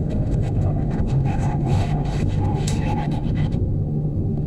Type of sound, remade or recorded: remade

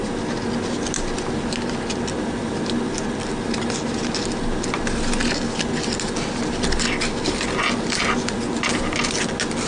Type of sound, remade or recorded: recorded